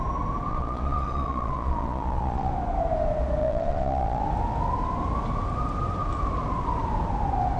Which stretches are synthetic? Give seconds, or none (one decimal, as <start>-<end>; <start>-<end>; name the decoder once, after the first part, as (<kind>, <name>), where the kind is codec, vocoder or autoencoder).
0.5-2.5 (vocoder, Vocos); 3.4-4.2